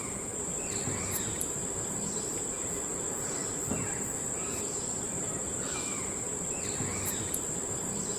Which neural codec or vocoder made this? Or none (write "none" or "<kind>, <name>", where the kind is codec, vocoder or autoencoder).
vocoder, BigVGAN v2